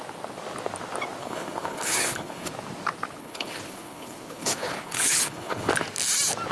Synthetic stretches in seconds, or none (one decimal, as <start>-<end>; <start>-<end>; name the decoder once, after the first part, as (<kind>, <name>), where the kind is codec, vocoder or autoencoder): 1.2-2.5 (codec, HILCodec); 3.2-5.7